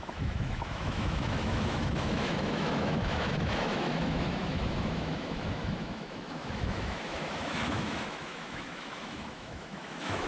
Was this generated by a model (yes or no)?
yes